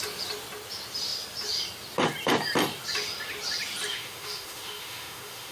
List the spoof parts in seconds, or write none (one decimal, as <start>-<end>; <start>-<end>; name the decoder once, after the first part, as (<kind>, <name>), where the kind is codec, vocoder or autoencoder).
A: 3.9-5.5 (autoencoder, DAC-VAE)